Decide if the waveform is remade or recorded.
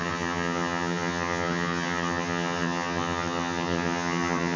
remade